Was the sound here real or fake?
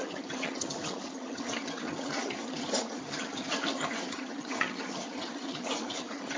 fake